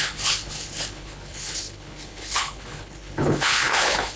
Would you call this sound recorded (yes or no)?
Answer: no